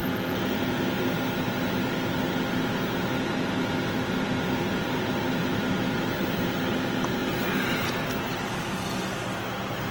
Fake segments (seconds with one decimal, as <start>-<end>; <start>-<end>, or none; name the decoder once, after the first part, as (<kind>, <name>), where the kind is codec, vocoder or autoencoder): 0.0-0.8 (vocoder, Vocos)

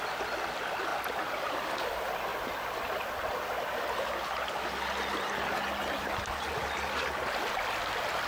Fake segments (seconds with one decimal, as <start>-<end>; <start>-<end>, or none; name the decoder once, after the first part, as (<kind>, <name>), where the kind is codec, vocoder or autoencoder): none

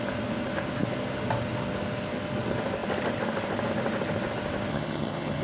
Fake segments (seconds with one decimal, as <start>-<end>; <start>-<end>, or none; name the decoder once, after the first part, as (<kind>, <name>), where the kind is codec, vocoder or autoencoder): 4.7-5.4 (vocoder, HiFi-GAN)

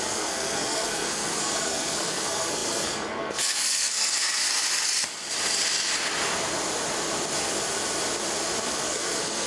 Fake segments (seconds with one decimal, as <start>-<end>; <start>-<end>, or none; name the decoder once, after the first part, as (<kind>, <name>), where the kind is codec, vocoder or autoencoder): 0.0-4.4 (codec, SNAC); 8.7-9.5

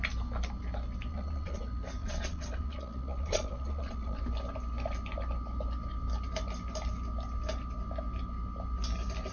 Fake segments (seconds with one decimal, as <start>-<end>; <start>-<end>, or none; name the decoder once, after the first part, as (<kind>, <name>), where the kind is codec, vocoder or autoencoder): 1.1-1.6 (vocoder, Vocos); 2.0-4.2

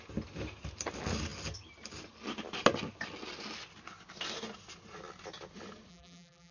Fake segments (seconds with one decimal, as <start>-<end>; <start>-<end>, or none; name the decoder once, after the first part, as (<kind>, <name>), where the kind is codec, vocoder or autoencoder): 5.9-6.5 (vocoder, BigVGAN v2)